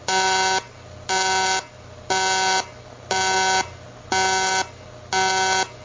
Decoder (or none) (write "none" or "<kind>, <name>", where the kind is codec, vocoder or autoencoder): none